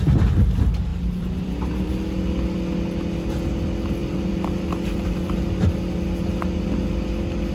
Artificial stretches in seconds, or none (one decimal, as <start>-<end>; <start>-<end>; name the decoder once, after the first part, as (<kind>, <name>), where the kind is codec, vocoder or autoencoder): 0.9-1.9 (vocoder, BigVGAN v2); 4.0-5.4